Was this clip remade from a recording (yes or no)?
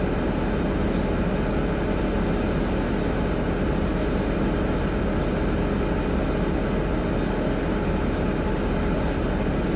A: no